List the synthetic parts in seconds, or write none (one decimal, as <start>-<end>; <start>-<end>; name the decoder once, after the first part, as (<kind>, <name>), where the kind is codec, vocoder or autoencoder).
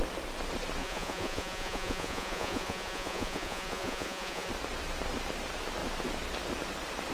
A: 0.8-4.5 (vocoder, Vocos)